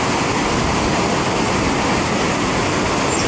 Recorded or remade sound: recorded